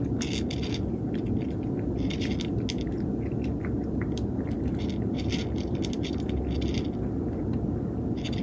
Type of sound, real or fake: real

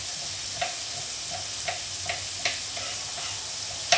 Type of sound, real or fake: real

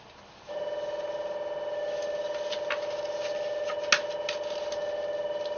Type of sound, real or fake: real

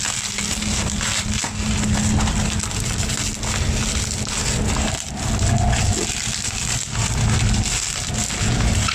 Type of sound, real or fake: real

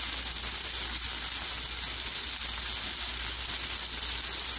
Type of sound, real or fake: real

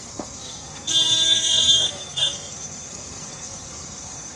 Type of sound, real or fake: fake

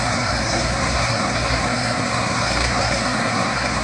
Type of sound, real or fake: fake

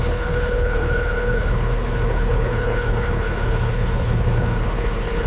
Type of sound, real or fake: fake